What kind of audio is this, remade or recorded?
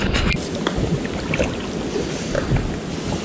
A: recorded